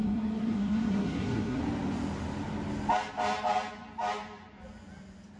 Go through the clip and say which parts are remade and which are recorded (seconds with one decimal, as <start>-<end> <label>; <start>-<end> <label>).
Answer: 0.0-1.6 remade; 1.6-5.4 recorded